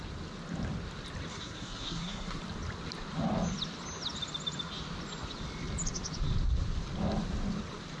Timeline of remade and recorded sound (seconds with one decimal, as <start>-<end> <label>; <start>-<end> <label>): 0.0-1.3 recorded; 1.3-2.4 remade; 2.4-8.0 recorded